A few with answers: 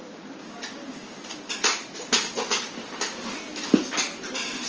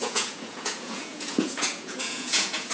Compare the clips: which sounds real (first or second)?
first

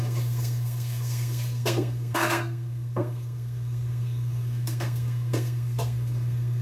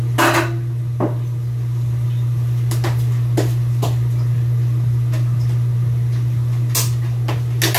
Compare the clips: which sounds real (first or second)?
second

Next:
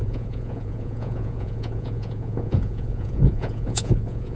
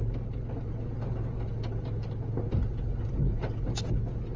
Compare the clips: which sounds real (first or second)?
second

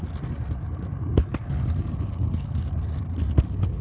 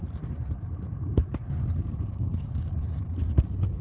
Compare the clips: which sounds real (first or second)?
first